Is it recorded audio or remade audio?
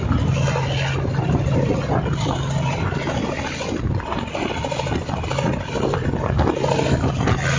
recorded